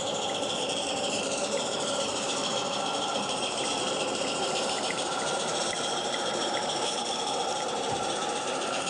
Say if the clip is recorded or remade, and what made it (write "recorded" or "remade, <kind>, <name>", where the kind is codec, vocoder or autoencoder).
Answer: remade, vocoder, BigVGAN v2